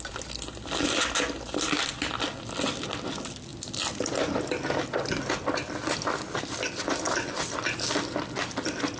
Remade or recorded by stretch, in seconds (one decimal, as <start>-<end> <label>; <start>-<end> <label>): 0.0-9.0 recorded